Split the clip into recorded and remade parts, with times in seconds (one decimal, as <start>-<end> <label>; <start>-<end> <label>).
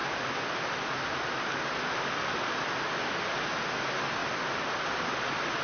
0.0-4.2 recorded; 4.2-5.0 remade; 5.0-5.6 recorded